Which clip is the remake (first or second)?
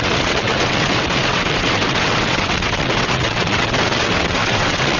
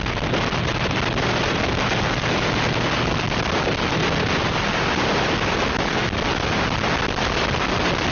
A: first